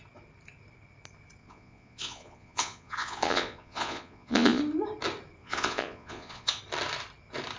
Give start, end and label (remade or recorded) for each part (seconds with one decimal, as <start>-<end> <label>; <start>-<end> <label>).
0.0-1.4 recorded; 1.4-4.6 remade; 4.6-5.4 recorded; 5.4-6.6 remade; 6.6-7.6 recorded